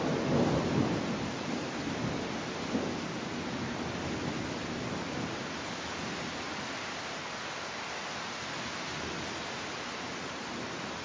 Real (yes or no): yes